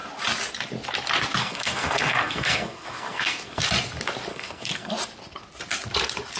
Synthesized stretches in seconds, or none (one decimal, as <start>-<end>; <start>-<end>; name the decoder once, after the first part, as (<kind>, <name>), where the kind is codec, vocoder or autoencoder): 1.4-3.6 (codec, SNAC); 4.3-4.9